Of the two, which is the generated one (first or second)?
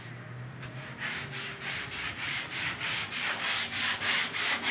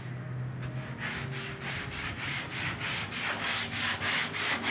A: first